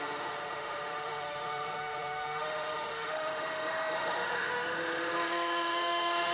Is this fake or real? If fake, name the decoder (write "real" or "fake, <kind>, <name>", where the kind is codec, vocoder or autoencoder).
fake, autoencoder, DAC-VAE